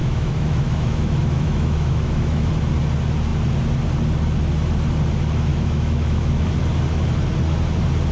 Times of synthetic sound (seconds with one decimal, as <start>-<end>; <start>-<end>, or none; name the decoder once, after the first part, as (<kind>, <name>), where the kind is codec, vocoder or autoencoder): 0.0-2.5 (autoencoder, DAC-VAE); 5.5-6.5